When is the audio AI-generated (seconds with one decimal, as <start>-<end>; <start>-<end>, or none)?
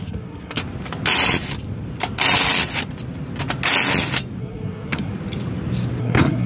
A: 0.0-0.6; 4.4-5.1; 6.0-6.5